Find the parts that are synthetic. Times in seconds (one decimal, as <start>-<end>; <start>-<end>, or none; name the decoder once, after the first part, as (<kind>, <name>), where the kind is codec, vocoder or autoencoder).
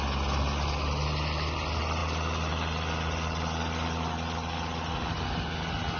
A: none